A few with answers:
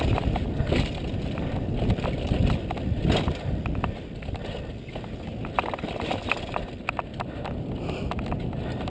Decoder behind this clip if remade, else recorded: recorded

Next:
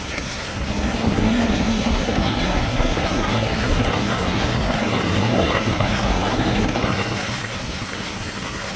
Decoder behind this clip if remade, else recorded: remade, codec, SNAC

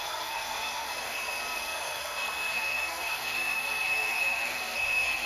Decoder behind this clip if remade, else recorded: remade, codec, SNAC